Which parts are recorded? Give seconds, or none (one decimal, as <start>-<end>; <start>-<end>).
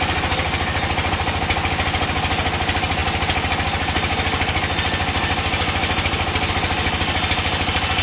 0.0-8.0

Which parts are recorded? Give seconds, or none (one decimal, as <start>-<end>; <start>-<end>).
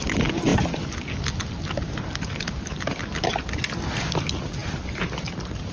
0.0-5.7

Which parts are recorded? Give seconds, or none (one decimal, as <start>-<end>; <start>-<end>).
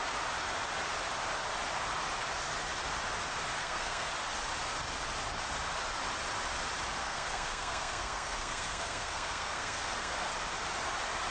0.0-3.6; 4.1-7.0; 10.3-11.3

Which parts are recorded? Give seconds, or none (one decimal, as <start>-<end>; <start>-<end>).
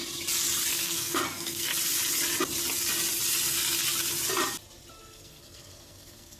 0.0-0.7; 1.7-5.0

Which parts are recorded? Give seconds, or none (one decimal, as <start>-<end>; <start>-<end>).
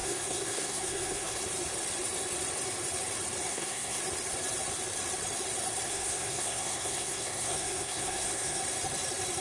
1.4-3.5; 4.0-5.9; 8.6-9.4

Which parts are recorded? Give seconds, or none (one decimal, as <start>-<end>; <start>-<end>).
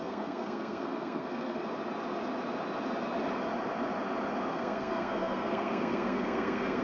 1.6-4.5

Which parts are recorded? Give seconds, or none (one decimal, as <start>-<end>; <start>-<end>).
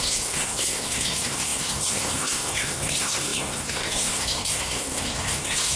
none